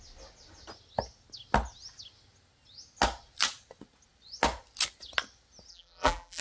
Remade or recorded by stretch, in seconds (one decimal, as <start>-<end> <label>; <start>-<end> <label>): 0.0-5.7 recorded; 5.7-6.4 remade